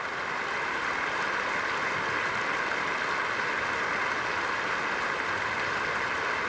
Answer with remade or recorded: recorded